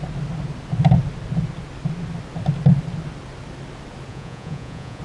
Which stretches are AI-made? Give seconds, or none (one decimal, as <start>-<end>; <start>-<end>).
4.1-5.0